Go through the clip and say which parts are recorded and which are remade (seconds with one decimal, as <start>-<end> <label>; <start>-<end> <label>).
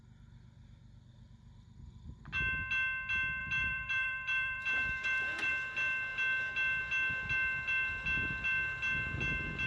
0.0-3.4 recorded; 3.4-5.5 remade; 5.5-9.7 recorded